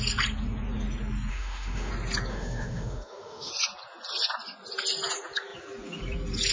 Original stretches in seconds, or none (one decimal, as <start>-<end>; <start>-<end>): 0.0-1.3; 1.9-2.3; 3.5-6.5